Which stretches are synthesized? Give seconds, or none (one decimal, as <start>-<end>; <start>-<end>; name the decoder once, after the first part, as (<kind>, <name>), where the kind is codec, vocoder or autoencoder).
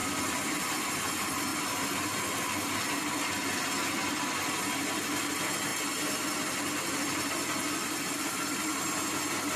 none